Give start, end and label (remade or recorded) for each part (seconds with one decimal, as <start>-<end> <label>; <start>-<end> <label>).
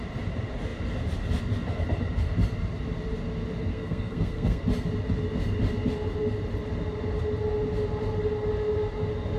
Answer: 0.0-3.7 recorded; 3.7-4.6 remade; 4.6-9.4 recorded